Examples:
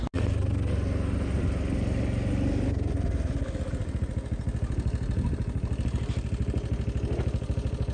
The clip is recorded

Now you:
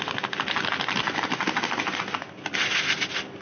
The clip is recorded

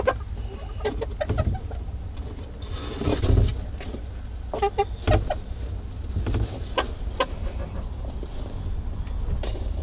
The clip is recorded